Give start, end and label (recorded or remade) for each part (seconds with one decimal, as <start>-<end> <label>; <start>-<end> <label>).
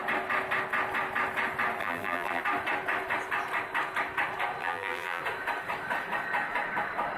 0.0-1.8 recorded; 1.8-2.4 remade; 2.4-4.6 recorded; 4.6-5.2 remade; 5.2-7.2 recorded